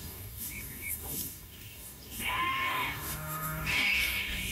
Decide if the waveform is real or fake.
fake